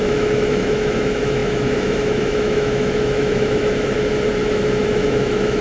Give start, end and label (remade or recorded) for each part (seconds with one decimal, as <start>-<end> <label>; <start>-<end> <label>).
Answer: 0.0-5.6 remade